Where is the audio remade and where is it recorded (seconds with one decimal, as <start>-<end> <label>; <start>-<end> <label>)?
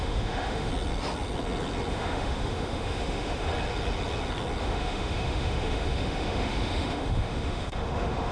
0.0-0.7 remade; 0.7-1.9 recorded; 1.9-3.5 remade; 3.5-4.6 recorded; 4.6-8.3 remade